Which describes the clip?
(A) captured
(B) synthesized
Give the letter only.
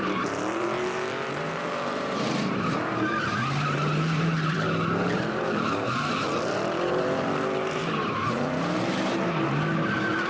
B